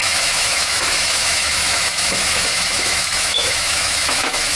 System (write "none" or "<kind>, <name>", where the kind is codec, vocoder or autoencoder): autoencoder, DAC-VAE